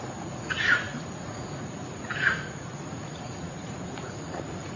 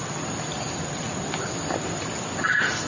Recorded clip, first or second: second